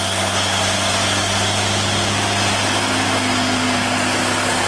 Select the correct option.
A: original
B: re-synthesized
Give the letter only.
A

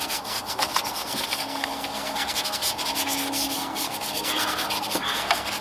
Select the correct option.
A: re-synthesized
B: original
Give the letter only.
A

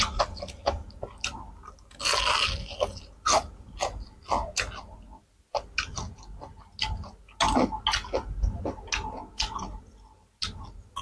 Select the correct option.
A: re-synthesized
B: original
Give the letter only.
B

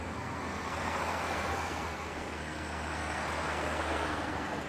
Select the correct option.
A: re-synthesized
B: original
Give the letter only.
A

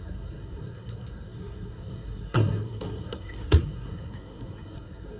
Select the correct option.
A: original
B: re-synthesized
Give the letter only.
B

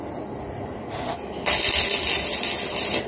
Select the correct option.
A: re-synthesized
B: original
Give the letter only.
B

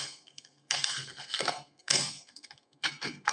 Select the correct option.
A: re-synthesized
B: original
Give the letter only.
A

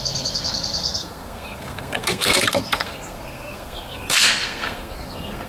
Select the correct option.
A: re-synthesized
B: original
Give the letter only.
A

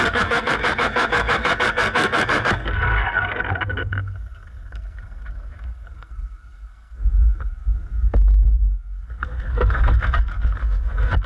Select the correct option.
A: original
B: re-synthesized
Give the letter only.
B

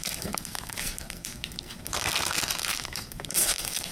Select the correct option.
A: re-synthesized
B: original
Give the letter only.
A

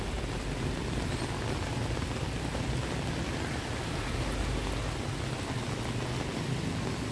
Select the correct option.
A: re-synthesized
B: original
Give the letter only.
B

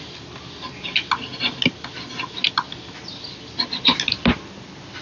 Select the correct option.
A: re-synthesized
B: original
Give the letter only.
B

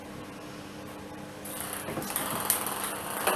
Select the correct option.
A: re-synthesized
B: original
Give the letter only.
B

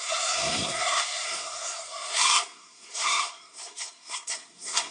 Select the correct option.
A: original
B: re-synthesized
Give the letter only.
B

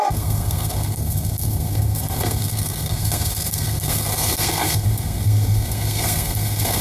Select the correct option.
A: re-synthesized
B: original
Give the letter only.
A